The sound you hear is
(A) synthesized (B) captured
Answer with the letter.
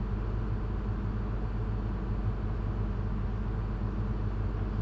B